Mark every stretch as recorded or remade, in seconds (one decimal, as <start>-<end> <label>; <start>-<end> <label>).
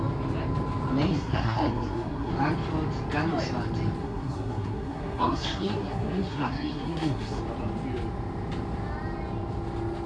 0.0-1.1 recorded; 1.1-2.3 remade; 2.3-4.0 recorded; 4.0-7.4 remade; 7.4-10.1 recorded